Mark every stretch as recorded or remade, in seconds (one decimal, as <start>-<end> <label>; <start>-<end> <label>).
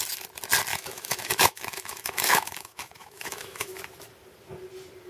0.0-0.7 recorded; 0.7-3.8 remade; 3.8-5.1 recorded